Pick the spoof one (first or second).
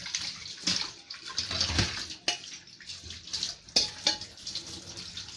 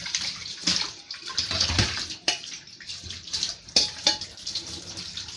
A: second